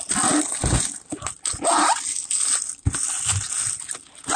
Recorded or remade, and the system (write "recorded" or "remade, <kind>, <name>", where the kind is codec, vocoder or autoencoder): recorded